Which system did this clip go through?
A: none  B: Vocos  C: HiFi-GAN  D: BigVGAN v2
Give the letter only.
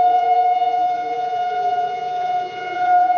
B